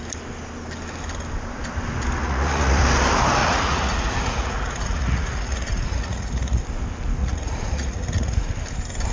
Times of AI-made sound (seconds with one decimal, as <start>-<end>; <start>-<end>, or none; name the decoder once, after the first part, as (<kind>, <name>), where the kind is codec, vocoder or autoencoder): 2.2-2.8 (vocoder, Vocos); 3.4-6.6; 7.2-8.5